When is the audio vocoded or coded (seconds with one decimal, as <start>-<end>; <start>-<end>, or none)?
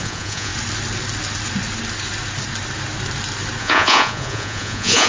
0.0-0.5; 3.6-5.1